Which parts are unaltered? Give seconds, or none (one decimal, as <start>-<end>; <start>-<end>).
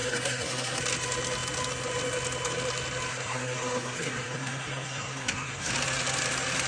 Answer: 0.8-3.1; 5.7-6.7